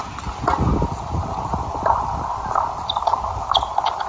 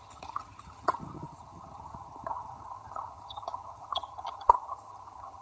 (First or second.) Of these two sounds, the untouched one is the first